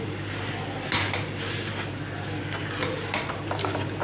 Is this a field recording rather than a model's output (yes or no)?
yes